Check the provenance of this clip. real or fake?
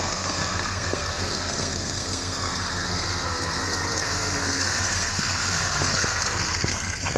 fake